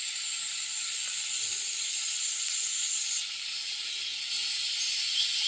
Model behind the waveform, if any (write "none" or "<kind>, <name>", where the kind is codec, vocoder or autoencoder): none